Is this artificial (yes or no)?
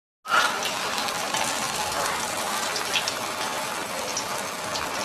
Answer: no